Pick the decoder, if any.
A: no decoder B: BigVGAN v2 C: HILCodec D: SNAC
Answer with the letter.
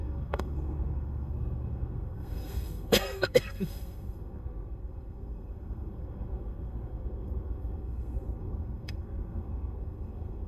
D